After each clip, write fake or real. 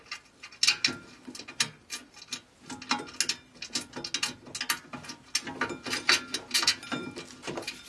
real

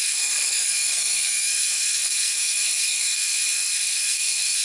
fake